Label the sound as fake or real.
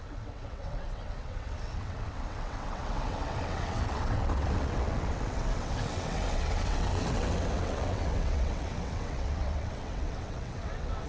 fake